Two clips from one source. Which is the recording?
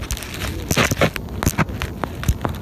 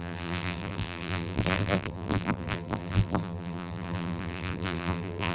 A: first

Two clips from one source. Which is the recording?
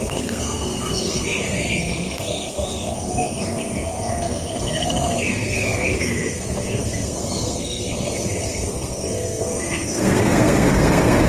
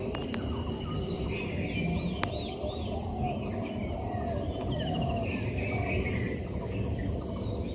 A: second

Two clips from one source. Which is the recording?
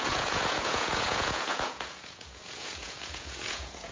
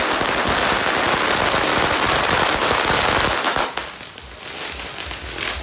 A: second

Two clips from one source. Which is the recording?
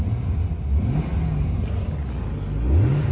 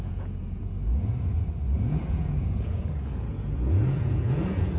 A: first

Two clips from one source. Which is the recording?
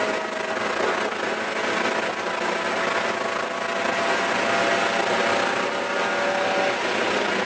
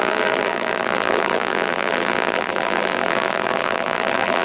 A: first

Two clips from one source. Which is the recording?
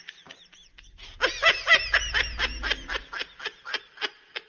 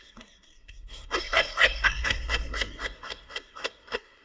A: first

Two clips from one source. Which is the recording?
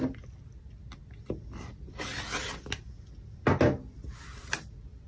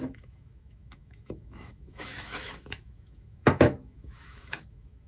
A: first